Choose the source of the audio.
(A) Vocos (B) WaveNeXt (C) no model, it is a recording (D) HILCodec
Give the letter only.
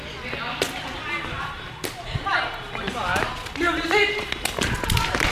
C